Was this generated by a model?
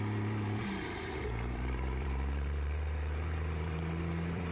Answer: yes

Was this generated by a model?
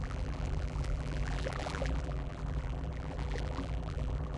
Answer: yes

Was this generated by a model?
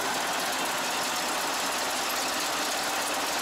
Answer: no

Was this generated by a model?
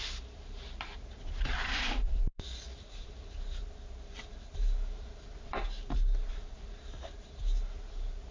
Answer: yes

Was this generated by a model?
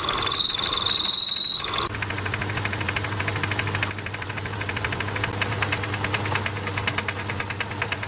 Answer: no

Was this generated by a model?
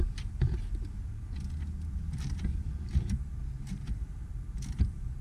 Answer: yes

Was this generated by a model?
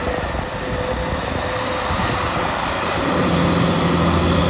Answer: no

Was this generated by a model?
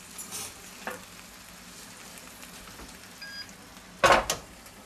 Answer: no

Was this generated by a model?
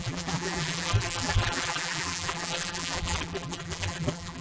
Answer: yes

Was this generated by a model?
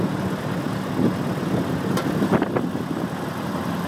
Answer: no